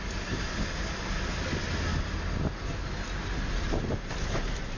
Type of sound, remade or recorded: recorded